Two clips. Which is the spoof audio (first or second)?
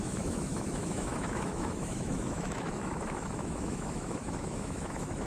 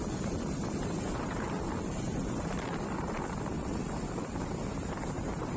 first